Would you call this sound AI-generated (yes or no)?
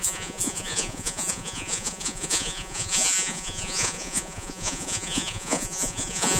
yes